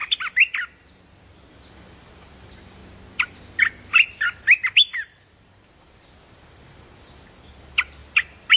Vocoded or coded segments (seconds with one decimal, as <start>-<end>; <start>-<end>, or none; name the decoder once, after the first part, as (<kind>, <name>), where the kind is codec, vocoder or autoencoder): 1.5-2.8 (vocoder, BigVGAN v2); 5.3-8.0